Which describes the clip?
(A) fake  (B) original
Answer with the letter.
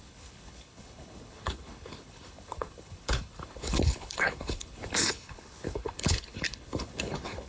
A